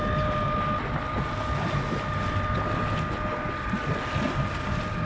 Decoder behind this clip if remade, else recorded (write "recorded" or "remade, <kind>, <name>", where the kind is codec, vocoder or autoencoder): recorded